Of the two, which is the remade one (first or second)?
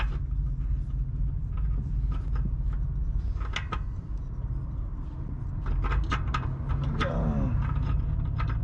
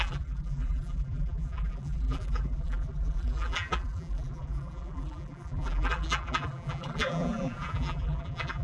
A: second